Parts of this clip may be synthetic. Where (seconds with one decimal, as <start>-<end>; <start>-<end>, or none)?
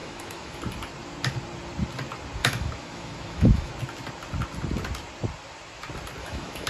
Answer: 0.0-0.6; 2.4-3.7; 6.2-6.7